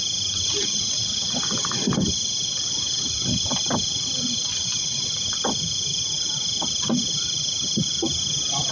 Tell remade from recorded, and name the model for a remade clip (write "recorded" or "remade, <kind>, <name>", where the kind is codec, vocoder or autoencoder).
recorded